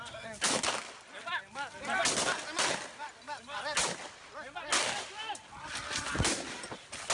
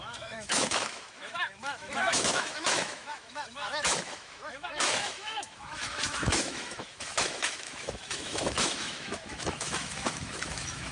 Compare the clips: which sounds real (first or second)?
first